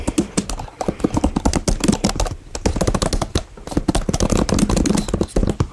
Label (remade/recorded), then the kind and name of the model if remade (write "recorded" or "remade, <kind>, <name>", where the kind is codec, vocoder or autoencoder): recorded